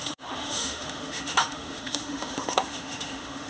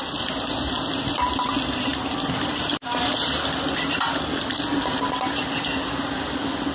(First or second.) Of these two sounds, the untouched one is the second